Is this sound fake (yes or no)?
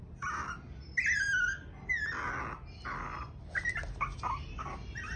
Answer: no